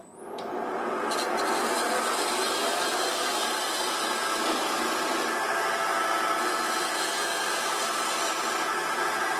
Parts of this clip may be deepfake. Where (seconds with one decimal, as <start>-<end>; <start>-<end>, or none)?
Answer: 3.1-4.2